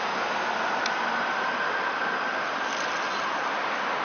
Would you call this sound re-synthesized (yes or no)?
no